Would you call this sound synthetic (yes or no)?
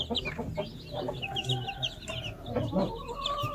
no